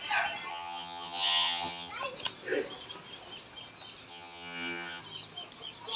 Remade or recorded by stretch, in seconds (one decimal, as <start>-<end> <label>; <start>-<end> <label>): 0.0-0.5 recorded; 0.5-1.9 remade; 1.9-4.1 recorded; 4.1-5.0 remade; 5.0-6.0 recorded